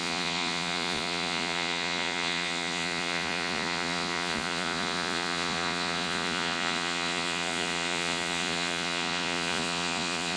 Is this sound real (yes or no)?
no